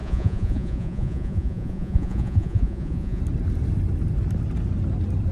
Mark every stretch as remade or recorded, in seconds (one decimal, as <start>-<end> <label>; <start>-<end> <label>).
0.0-3.2 remade; 3.2-5.3 recorded